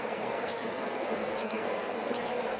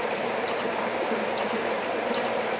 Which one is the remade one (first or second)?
first